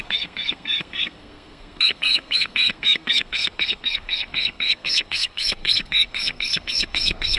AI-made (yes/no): yes